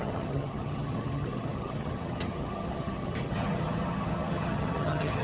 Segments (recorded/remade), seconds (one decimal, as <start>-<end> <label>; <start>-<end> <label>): 0.0-5.2 remade